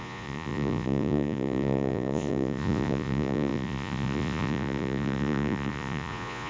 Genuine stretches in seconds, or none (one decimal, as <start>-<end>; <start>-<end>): none